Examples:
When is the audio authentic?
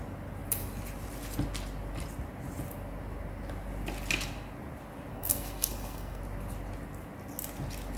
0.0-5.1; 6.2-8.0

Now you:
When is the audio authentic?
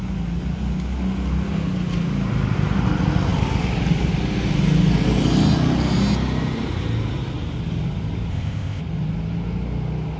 0.0-8.3; 8.8-10.2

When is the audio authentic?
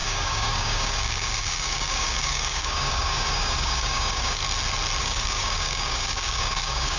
4.4-5.0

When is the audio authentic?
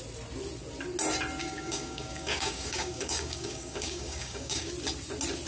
0.0-1.4; 4.7-5.5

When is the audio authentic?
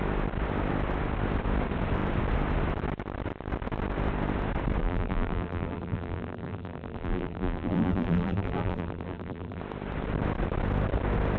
0.0-4.8; 9.6-11.4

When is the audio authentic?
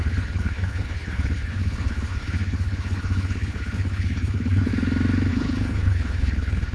4.7-5.3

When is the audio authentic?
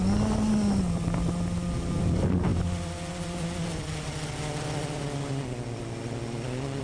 0.0-6.8